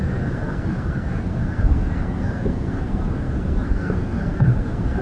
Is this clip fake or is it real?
fake